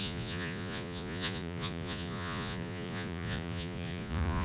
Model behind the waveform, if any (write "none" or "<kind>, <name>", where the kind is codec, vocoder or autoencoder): vocoder, Vocos